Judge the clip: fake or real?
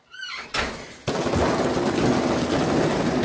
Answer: real